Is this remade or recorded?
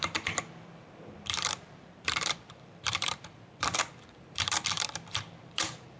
remade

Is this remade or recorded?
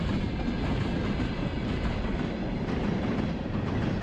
recorded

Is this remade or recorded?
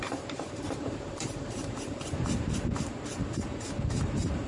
remade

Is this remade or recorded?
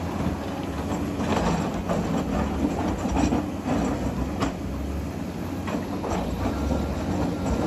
recorded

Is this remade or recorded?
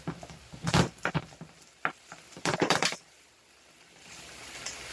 remade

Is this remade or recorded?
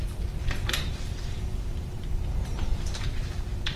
remade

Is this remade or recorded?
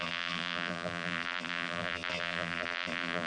remade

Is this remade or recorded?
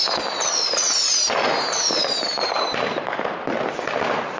recorded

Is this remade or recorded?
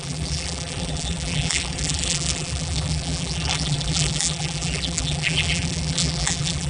remade